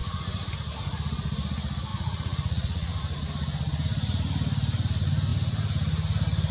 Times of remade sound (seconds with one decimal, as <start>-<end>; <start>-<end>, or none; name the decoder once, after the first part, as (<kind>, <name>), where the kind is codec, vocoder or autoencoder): 1.9-3.0 (vocoder, Vocos)